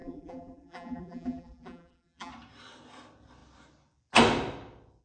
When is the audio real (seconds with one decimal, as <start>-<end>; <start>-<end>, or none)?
2.3-5.0